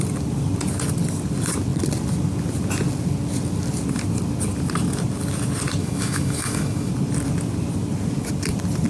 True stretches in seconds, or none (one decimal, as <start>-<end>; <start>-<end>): 0.0-5.8; 6.9-8.9